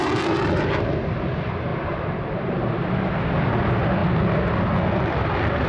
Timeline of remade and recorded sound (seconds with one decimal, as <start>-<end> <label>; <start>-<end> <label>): 0.0-1.7 recorded; 1.7-2.6 remade; 2.6-5.7 recorded

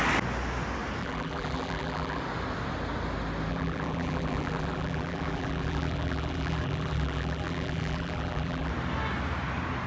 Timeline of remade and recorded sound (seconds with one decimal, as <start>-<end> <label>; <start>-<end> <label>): 0.0-1.0 recorded; 1.0-2.2 remade; 2.2-3.5 recorded; 3.5-8.7 remade; 8.7-9.9 recorded

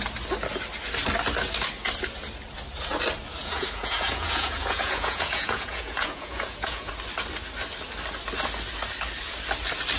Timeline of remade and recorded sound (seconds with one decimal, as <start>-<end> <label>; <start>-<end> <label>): 0.0-3.4 recorded; 3.4-6.9 remade; 6.9-10.0 recorded